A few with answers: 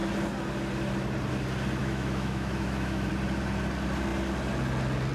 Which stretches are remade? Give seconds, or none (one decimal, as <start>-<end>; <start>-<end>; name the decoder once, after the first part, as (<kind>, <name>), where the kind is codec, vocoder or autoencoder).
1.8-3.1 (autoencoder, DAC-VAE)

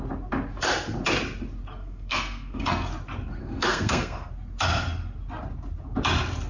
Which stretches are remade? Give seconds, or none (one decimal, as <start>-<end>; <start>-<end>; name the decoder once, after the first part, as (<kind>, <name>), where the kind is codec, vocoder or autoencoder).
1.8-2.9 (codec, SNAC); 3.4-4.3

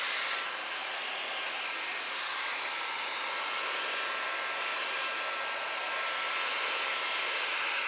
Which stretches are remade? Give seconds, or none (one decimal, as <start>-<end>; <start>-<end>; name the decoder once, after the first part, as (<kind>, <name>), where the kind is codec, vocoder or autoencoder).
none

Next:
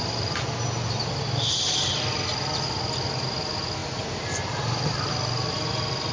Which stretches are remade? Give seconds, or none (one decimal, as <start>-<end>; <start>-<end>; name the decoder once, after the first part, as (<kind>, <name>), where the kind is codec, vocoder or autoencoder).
none